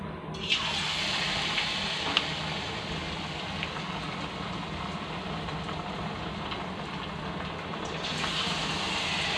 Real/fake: real